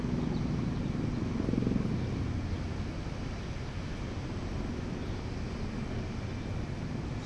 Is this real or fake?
real